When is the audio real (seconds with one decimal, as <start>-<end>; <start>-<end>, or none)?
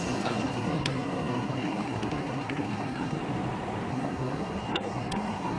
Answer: 3.2-3.9